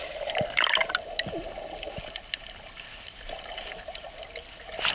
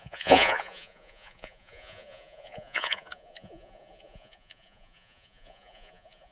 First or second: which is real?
first